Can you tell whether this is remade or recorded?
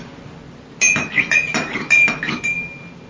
recorded